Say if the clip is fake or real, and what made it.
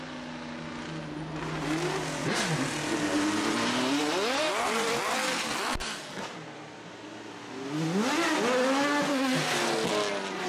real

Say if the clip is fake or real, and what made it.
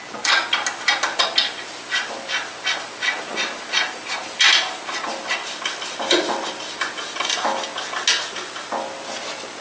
real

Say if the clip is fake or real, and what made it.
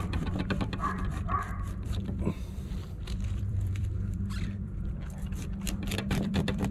fake, vocoder, BigVGAN v2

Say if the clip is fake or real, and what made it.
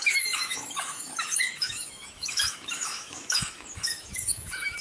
fake, autoencoder, DAC-VAE